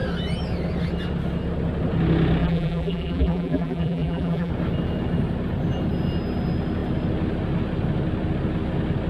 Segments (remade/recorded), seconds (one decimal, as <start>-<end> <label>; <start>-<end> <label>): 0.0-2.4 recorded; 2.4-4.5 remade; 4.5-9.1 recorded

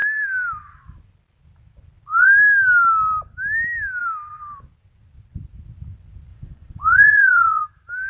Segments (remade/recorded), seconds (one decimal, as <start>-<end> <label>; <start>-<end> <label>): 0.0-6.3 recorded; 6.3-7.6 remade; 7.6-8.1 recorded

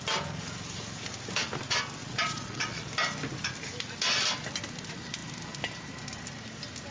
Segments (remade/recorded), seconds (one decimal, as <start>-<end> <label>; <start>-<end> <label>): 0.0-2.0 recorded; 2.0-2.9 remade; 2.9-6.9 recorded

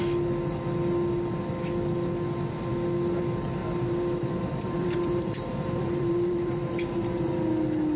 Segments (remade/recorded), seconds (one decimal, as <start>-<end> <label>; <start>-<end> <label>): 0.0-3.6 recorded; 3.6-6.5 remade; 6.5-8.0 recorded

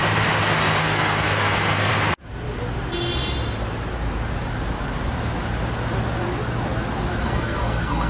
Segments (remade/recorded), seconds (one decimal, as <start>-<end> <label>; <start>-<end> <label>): 0.0-0.8 recorded; 0.8-1.9 remade; 1.9-7.2 recorded; 7.2-8.1 remade

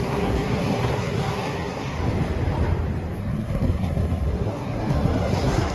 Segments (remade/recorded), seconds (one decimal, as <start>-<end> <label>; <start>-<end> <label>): 0.0-2.0 remade; 2.0-3.2 recorded; 3.2-5.7 remade

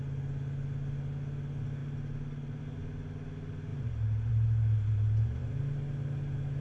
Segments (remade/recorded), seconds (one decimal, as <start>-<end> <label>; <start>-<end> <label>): 0.0-6.6 recorded

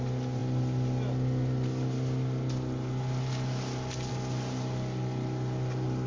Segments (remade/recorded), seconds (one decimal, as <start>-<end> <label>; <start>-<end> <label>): 0.0-6.1 recorded